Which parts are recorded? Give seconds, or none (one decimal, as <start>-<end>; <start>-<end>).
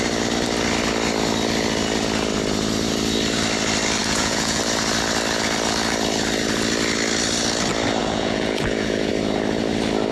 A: 0.0-4.0; 4.6-8.0; 9.1-10.1